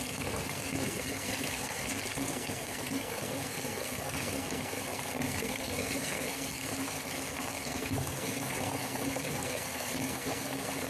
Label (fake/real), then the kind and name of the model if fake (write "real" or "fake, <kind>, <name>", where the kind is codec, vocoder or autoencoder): fake, codec, SNAC